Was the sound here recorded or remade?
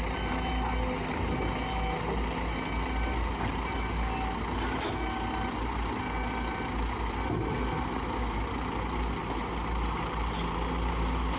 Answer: recorded